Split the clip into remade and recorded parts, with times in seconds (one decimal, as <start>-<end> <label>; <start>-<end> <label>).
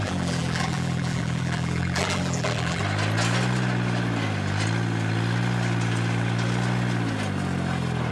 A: 0.0-2.8 remade; 2.8-8.1 recorded